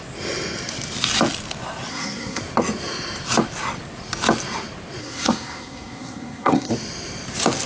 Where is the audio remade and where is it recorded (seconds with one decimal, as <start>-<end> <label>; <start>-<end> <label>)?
0.0-1.9 recorded; 1.9-2.4 remade; 2.4-5.0 recorded; 5.0-6.7 remade; 6.7-7.7 recorded